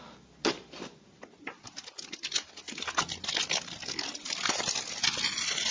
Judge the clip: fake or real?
real